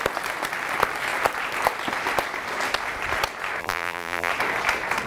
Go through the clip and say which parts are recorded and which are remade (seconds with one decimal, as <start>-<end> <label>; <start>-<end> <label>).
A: 0.0-3.6 recorded; 3.6-4.3 remade; 4.3-5.1 recorded